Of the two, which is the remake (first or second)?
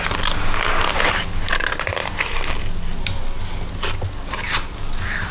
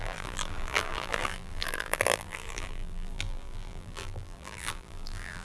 second